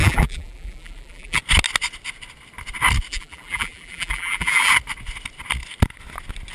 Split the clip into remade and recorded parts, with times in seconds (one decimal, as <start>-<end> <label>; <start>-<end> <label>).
0.0-1.4 remade; 1.4-3.1 recorded; 3.1-4.7 remade; 4.7-6.5 recorded